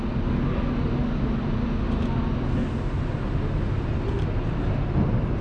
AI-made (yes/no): no